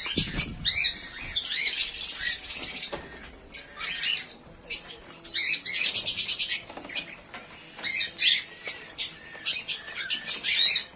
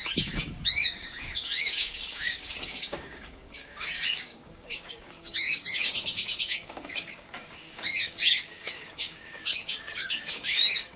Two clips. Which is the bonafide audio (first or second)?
first